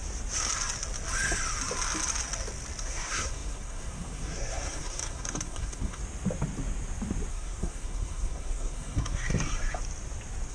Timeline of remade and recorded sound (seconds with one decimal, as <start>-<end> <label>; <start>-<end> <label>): 0.0-2.8 recorded; 2.8-6.0 remade; 6.0-7.3 recorded; 7.3-9.3 remade; 9.3-10.5 recorded